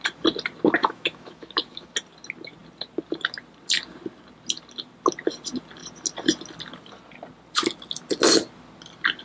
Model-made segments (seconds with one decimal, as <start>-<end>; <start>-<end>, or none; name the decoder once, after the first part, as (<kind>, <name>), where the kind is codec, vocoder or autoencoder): 0.8-1.9 (autoencoder, DAC-VAE)